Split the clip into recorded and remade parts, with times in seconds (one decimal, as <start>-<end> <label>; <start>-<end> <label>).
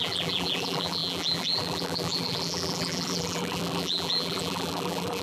0.0-5.2 remade